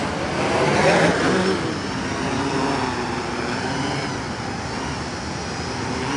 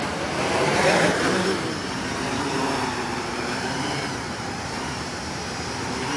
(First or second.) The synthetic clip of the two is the second